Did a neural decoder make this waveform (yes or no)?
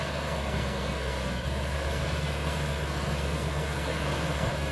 yes